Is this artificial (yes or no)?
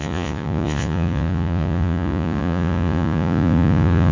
yes